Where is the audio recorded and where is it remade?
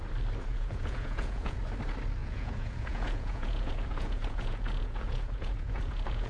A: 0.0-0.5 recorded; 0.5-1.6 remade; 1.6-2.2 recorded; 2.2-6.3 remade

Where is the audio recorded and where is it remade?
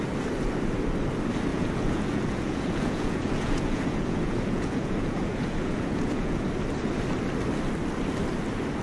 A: 0.0-1.5 recorded; 1.5-6.5 remade; 6.5-8.8 recorded